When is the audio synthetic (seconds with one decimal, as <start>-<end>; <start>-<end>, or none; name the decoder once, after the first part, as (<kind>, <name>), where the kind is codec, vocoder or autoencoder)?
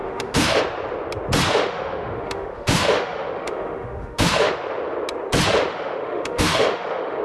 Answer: 0.0-0.6 (autoencoder, DAC-VAE); 1.5-4.5; 5.7-7.2